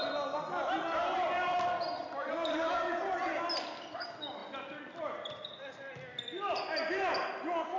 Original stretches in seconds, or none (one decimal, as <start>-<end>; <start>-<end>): 0.0-7.8